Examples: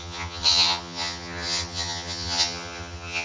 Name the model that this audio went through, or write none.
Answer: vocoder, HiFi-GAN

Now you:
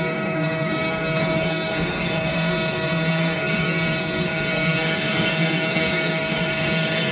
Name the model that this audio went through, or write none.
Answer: codec, SNAC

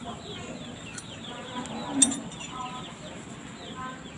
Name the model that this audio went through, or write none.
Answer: none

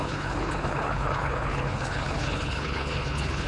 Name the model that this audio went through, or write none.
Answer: codec, HILCodec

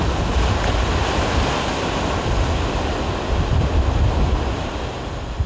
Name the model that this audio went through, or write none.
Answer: none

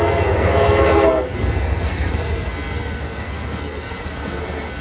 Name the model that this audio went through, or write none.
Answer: codec, SNAC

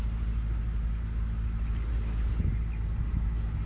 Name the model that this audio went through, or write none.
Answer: none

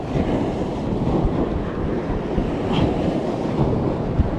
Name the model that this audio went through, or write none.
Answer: none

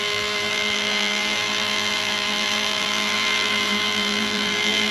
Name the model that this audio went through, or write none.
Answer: vocoder, BigVGAN v2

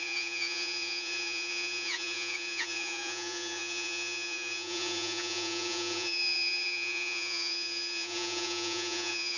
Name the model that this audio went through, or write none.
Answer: vocoder, Vocos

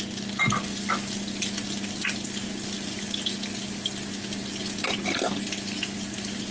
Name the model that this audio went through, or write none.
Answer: none